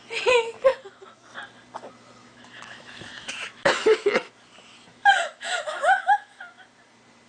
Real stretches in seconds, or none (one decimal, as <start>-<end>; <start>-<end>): 0.0-0.7; 1.3-2.2; 4.3-4.9; 6.4-7.3

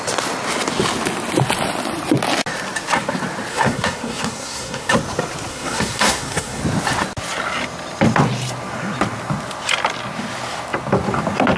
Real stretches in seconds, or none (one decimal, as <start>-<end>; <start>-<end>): 0.0-3.5; 4.9-5.5; 6.6-11.6

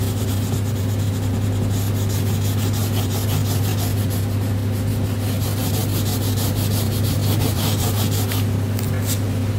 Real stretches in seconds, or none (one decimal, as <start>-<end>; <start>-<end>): 0.0-9.6

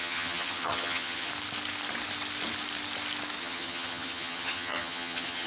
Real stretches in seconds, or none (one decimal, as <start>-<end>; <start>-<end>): 1.3-3.4

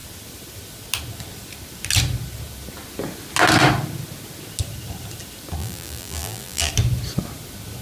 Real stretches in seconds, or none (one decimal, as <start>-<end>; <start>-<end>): 0.0-5.6; 6.7-7.8

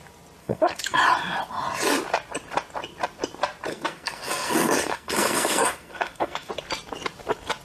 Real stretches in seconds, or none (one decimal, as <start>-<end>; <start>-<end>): 0.0-0.4; 1.0-3.7; 6.5-7.6

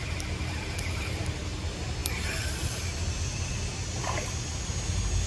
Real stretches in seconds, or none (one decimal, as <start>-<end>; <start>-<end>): 0.0-5.3